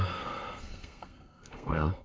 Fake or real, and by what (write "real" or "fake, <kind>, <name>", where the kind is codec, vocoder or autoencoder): fake, codec, SNAC